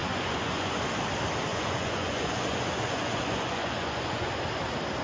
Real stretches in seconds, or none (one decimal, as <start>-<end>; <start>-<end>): 0.8-1.5; 4.3-5.0